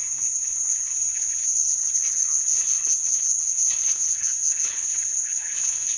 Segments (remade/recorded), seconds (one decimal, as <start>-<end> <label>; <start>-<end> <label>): 0.0-6.0 remade